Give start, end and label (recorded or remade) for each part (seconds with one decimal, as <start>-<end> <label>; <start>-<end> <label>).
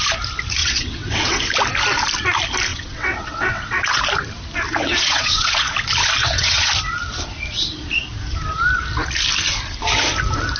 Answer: 0.0-0.6 recorded; 0.6-1.4 remade; 1.4-2.7 recorded; 2.7-4.0 remade; 4.0-4.8 recorded; 4.8-5.7 remade; 5.7-6.2 recorded; 6.2-6.7 remade; 6.7-10.6 recorded